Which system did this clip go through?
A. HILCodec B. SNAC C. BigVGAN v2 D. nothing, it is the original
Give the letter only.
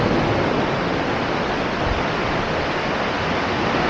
D